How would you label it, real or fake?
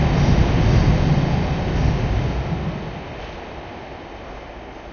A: real